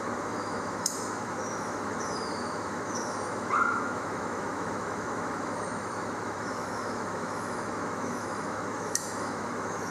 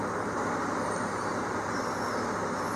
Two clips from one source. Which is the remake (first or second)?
first